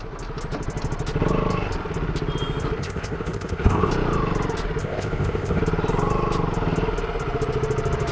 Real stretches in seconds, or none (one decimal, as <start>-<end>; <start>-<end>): 0.0-2.8; 3.9-4.8; 5.6-8.1